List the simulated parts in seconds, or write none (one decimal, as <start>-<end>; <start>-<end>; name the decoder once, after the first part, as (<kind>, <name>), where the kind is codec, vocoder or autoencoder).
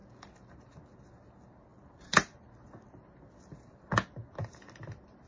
none